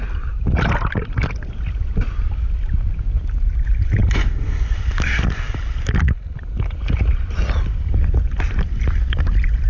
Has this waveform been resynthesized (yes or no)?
no